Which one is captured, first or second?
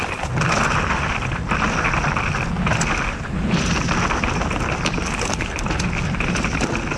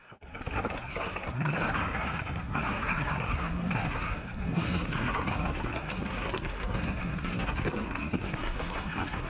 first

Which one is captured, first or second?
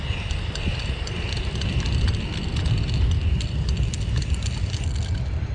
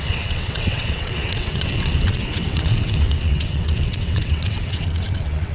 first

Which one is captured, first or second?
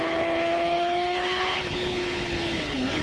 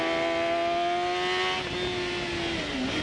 second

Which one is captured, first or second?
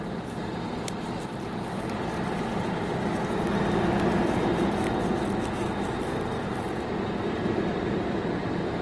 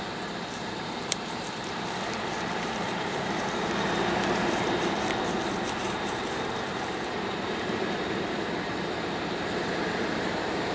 first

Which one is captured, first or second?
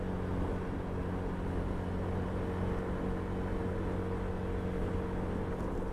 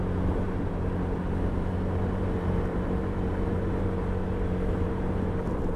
first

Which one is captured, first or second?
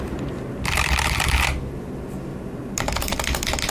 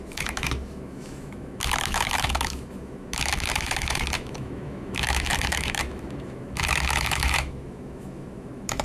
first